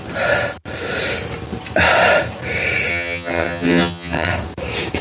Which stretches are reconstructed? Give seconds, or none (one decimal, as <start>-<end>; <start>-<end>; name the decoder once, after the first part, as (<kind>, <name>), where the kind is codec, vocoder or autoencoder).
2.9-4.3 (vocoder, HiFi-GAN)

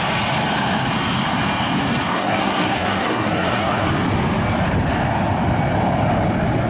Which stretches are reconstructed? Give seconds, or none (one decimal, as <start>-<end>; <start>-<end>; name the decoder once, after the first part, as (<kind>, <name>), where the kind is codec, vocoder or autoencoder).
2.1-3.9 (codec, SNAC)

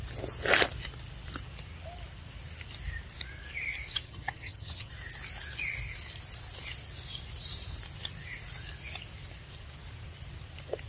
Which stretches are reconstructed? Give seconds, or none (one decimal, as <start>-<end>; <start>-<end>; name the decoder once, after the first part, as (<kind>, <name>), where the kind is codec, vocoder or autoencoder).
3.9-4.9 (vocoder, HiFi-GAN)